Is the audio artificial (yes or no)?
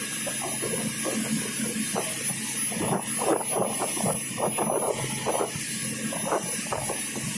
no